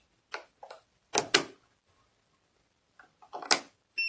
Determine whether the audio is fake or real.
real